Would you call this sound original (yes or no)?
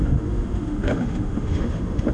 no